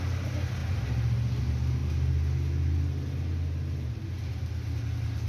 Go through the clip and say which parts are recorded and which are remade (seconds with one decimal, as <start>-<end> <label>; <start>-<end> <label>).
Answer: 0.0-5.3 recorded